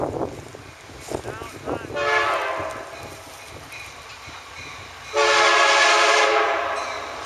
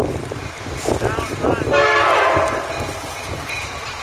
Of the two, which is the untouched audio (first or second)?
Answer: first